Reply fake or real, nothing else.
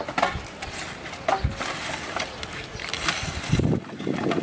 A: real